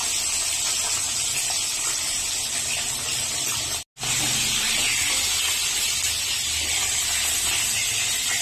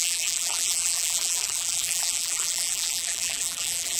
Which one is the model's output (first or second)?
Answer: second